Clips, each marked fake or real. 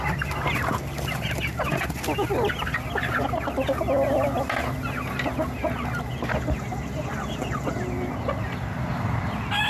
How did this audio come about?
real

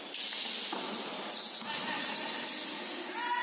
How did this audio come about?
real